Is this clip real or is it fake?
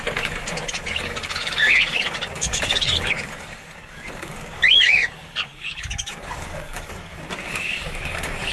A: fake